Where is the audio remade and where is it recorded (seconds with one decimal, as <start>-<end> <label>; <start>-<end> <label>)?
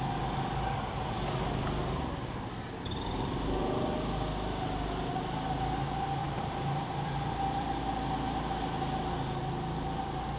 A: 0.0-6.2 recorded; 6.2-7.9 remade; 7.9-10.4 recorded